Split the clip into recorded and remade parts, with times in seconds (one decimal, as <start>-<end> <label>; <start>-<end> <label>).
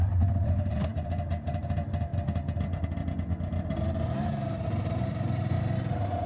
0.0-2.1 remade; 2.1-4.6 recorded; 4.6-6.3 remade